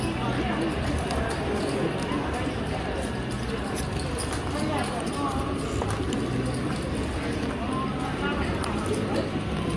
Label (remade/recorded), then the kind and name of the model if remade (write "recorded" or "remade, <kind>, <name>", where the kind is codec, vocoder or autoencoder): recorded